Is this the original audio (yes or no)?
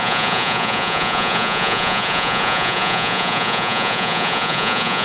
no